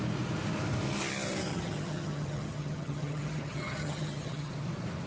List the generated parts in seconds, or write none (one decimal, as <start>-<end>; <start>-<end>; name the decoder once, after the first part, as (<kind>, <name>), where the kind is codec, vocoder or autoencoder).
1.5-4.5 (vocoder, HiFi-GAN)